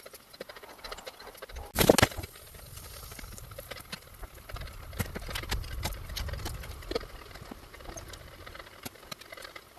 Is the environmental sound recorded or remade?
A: recorded